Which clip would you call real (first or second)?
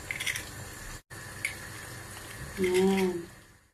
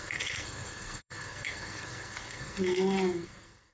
first